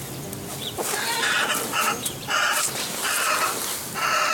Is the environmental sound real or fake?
real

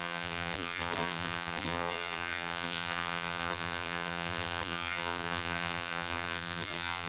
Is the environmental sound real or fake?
fake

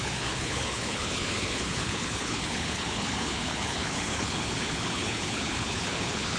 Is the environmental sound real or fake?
fake